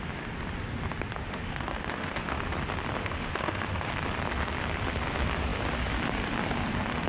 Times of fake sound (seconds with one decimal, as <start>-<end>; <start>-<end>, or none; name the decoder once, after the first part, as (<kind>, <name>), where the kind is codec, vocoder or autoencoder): 1.2-2.4 (autoencoder, DAC-VAE); 3.0-3.9